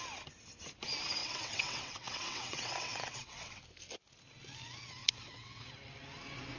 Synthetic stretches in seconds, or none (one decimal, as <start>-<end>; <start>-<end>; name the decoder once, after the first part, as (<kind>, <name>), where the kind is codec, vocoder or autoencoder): 1.2-3.6 (vocoder, WaveNeXt); 5.0-5.6